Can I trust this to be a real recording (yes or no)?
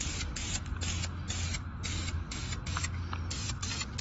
yes